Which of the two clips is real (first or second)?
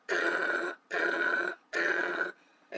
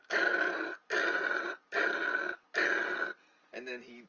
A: second